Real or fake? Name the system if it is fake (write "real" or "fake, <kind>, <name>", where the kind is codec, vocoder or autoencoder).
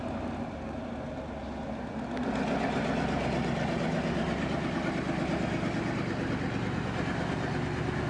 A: real